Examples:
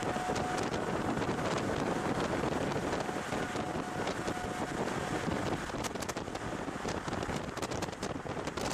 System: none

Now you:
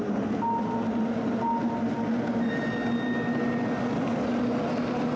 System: none